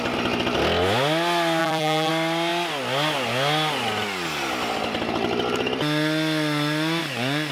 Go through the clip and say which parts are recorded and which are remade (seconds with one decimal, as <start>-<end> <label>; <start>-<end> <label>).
0.0-1.6 recorded; 1.6-2.1 remade; 2.1-7.5 recorded